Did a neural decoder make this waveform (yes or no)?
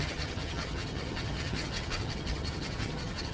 yes